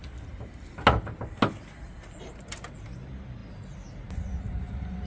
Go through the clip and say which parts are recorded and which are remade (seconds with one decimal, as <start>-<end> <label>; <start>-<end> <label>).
0.0-3.4 recorded; 3.4-4.1 remade; 4.1-5.1 recorded